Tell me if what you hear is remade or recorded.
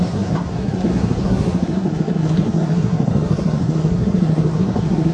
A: remade